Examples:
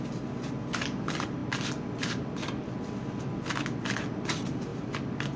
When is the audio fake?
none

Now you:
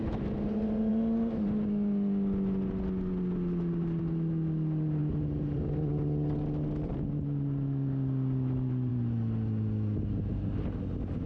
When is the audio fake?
none

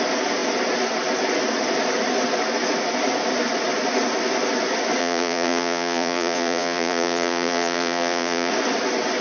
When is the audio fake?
5.0-8.5

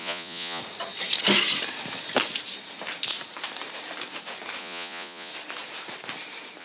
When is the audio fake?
0.0-0.6; 4.6-5.3

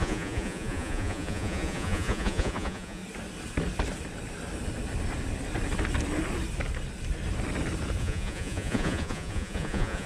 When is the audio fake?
0.0-3.0; 8.0-10.1

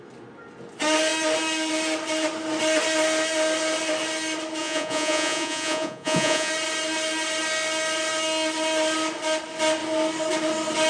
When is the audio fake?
4.6-6.5